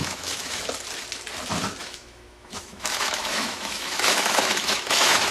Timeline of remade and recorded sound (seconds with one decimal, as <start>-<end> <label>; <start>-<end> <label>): 0.0-0.6 remade; 0.6-1.8 recorded; 1.8-5.3 remade